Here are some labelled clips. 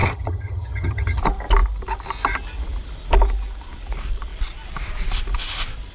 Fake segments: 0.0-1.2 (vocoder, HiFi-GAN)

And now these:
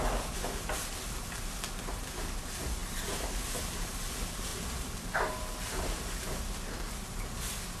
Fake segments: 2.8-4.0 (vocoder, BigVGAN v2); 4.5-6.4

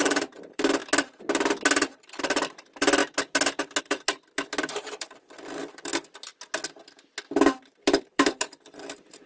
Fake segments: 0.0-0.8 (vocoder, BigVGAN v2); 2.2-3.0; 3.8-5.9; 7.6-9.3